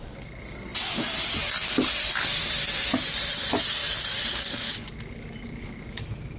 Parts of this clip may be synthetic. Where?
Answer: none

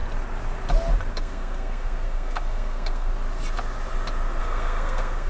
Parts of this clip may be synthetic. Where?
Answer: 1.1-3.1 (codec, SNAC); 4.4-5.3